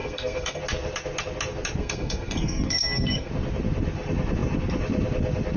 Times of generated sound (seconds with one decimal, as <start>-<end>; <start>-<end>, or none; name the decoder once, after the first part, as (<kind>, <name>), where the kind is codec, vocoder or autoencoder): 0.0-0.6 (codec, SNAC); 1.8-3.3